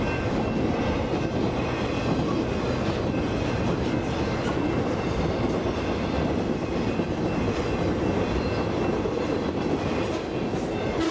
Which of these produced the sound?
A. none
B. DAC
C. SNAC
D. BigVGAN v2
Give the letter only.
A